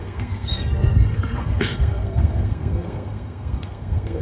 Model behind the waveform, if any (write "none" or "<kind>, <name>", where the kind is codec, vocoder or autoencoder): codec, SNAC